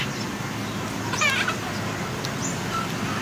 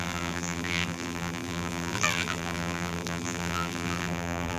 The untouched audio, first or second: first